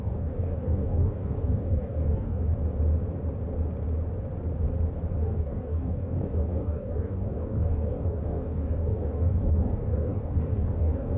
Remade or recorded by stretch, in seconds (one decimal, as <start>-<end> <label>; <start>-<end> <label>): 0.0-2.4 remade; 2.4-5.2 recorded; 5.2-11.2 remade

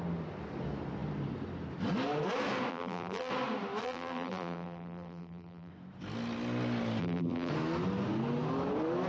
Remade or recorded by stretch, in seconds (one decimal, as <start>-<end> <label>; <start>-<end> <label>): 0.0-2.7 recorded; 2.7-3.3 remade; 3.3-3.8 recorded; 3.8-5.7 remade; 5.7-7.0 recorded; 7.0-7.5 remade; 7.5-9.1 recorded

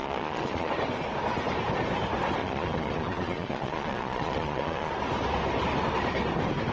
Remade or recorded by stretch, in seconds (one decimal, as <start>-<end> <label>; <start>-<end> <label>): 0.0-0.7 remade; 0.7-2.4 recorded; 2.4-4.9 remade; 4.9-6.7 recorded

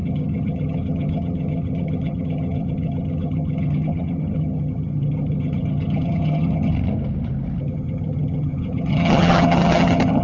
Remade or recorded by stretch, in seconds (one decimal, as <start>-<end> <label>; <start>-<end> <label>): 0.0-6.7 remade; 6.7-7.6 recorded; 7.6-10.2 remade

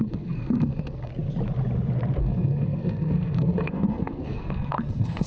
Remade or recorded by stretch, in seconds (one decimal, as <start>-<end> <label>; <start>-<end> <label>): 0.0-1.1 remade; 1.1-2.2 recorded; 2.2-5.3 remade